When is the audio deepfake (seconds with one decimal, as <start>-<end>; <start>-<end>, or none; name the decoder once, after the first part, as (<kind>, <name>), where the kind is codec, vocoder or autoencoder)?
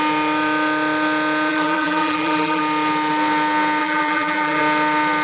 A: 1.5-2.6 (vocoder, BigVGAN v2); 3.8-4.6